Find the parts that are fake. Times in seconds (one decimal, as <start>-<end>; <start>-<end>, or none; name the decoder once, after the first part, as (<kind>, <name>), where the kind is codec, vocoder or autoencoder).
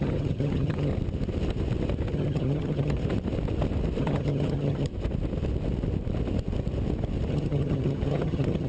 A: 0.0-0.9 (vocoder, HiFi-GAN); 2.1-3.0; 4.0-4.9; 7.3-8.7